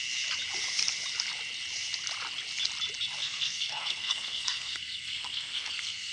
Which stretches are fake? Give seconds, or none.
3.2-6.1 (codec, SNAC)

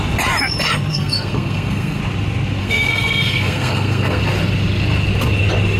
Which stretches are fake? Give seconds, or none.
0.9-2.0 (codec, SNAC); 2.6-4.2

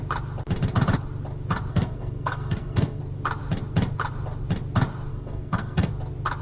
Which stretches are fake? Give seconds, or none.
1.7-3.0 (codec, SNAC); 5.1-5.9

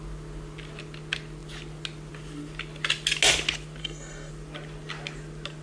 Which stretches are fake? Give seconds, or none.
3.8-4.3 (codec, SNAC)

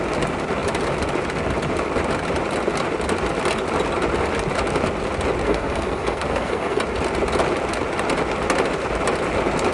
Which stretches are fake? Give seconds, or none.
5.4-6.8 (codec, SNAC)